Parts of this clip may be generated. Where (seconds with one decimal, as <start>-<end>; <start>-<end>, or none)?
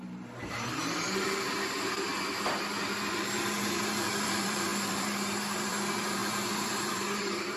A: 0.0-2.1; 3.1-7.6